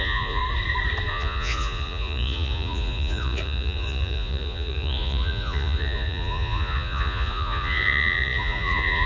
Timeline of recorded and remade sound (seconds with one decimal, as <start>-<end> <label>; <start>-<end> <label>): 0.0-0.4 remade; 0.4-1.1 recorded; 1.1-9.1 remade